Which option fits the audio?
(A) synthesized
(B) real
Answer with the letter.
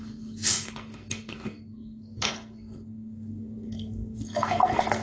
A